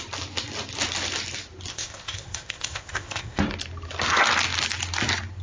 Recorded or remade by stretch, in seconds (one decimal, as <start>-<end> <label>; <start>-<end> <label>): 0.0-1.7 recorded; 1.7-3.4 remade; 3.4-5.4 recorded